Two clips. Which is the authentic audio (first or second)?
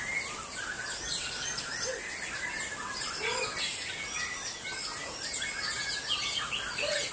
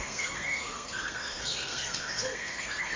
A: first